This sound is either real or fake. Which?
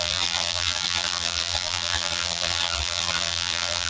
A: fake